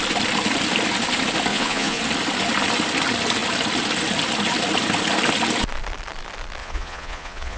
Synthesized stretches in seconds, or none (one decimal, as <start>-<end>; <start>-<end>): 1.5-2.0; 6.6-7.6